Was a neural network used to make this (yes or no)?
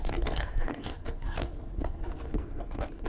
yes